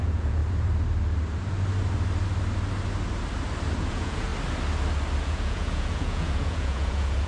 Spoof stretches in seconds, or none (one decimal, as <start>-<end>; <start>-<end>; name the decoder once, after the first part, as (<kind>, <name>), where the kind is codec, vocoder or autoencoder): 0.0-0.4 (vocoder, Vocos); 3.9-4.3; 5.2-7.3